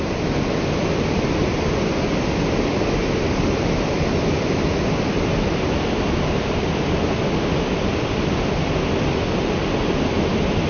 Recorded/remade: recorded